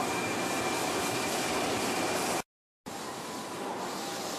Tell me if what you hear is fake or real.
real